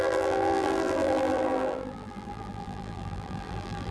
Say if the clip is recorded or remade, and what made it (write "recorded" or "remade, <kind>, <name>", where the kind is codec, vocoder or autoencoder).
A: remade, vocoder, BigVGAN v2